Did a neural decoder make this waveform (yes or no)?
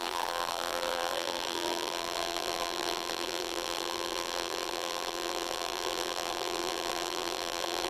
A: yes